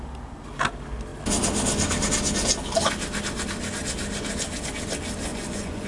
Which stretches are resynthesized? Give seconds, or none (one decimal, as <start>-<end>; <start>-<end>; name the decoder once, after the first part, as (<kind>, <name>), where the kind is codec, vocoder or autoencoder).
5.3-5.9 (vocoder, Vocos)